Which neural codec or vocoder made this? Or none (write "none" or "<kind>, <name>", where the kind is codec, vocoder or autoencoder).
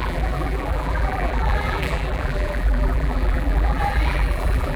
vocoder, BigVGAN v2